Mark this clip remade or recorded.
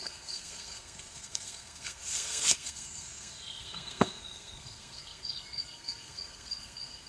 remade